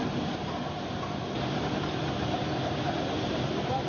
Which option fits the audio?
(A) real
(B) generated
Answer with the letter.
A